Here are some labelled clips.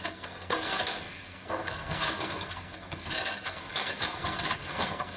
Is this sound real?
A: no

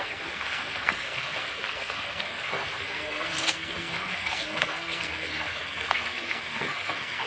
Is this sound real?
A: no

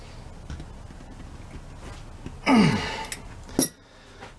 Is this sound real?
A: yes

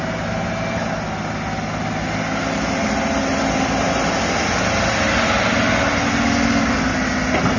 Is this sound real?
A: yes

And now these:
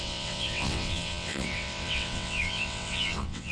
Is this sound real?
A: no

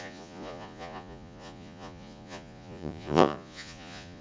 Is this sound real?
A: no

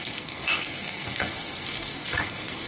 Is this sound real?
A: no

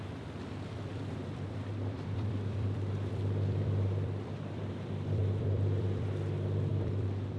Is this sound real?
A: no